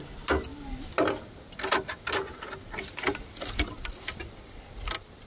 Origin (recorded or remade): recorded